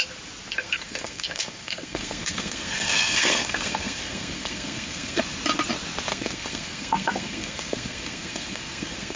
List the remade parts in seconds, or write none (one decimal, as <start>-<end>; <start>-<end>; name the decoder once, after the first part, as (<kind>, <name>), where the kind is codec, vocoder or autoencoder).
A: 0.5-5.2 (codec, SNAC); 6.1-9.2